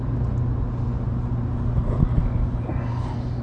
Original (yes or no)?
yes